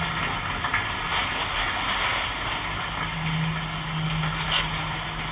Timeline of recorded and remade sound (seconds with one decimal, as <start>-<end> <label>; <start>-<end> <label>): 0.0-5.3 recorded